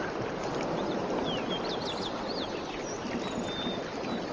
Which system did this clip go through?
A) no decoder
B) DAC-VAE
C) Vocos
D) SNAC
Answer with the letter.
A